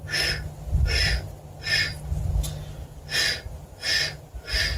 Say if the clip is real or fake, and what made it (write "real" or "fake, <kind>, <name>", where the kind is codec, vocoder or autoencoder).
real